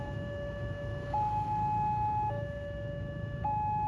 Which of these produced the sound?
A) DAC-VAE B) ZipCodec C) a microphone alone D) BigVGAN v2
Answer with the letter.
A